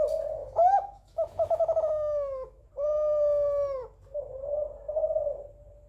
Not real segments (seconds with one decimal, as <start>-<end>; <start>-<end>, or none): 0.4-2.7